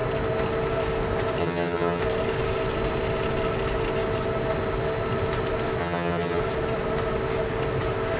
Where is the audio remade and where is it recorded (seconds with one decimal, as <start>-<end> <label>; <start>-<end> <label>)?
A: 0.0-1.4 recorded; 1.4-2.0 remade; 2.0-5.8 recorded; 5.8-6.4 remade; 6.4-8.2 recorded